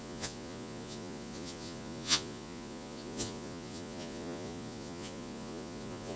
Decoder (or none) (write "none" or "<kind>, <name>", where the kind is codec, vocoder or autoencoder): vocoder, Vocos